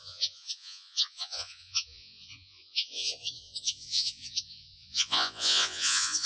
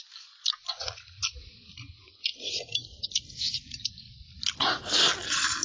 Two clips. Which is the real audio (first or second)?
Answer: second